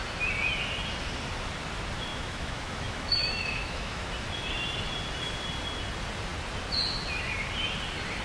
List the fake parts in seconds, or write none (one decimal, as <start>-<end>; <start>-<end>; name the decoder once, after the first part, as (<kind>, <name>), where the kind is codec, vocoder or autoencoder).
2.1-4.1 (autoencoder, DAC-VAE)